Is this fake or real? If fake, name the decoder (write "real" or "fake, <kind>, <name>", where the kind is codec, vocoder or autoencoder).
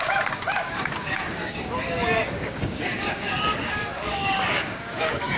fake, codec, DAC